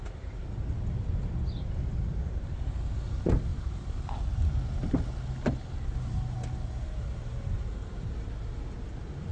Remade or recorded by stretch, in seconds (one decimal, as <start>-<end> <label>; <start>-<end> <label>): 0.0-9.3 recorded